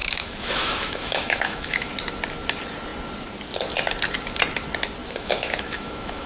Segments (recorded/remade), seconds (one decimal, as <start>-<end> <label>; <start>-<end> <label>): 0.0-1.9 remade; 1.9-5.0 recorded; 5.0-6.3 remade